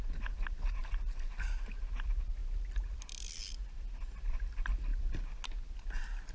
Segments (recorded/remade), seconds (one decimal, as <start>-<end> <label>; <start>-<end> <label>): 0.0-6.3 recorded